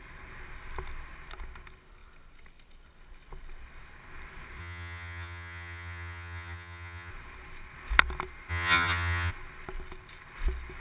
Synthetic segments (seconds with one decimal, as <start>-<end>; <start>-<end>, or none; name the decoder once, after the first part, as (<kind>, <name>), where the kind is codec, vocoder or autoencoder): 4.6-7.1 (vocoder, HiFi-GAN); 8.5-9.3